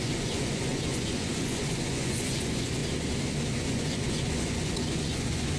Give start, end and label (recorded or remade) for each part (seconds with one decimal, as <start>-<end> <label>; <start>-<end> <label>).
0.0-2.8 remade; 2.8-3.6 recorded; 3.6-5.6 remade